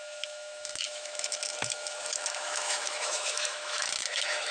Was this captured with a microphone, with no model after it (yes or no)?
no